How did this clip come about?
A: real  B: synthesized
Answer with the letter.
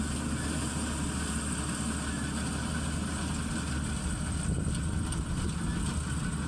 A